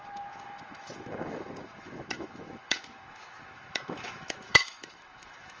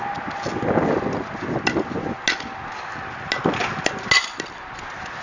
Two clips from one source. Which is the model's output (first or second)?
first